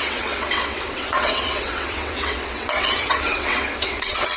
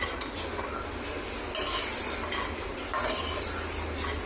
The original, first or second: second